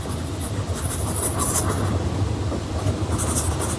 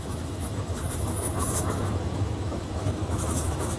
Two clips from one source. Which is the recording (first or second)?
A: first